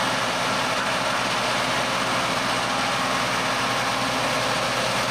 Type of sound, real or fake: real